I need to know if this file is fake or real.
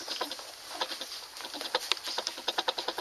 real